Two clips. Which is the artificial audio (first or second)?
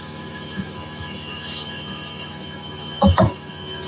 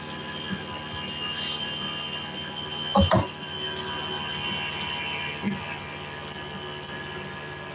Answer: first